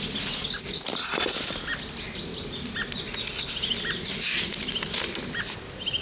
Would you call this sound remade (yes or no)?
no